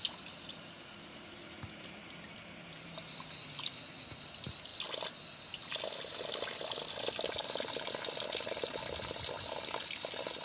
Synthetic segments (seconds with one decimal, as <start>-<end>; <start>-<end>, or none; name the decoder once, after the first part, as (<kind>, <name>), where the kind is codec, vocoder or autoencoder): none